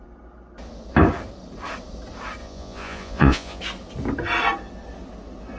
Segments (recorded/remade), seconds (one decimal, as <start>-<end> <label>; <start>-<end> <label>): 0.0-2.4 recorded; 2.4-3.6 remade; 3.6-5.6 recorded